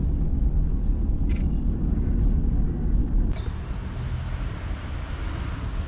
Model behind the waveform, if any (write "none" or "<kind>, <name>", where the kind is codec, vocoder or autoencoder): none